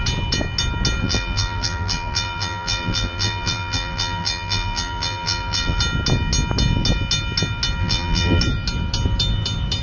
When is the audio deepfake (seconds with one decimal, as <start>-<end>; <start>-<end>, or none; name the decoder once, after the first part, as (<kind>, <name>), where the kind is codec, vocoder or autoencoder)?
1.0-5.8 (vocoder, BigVGAN v2); 7.8-8.4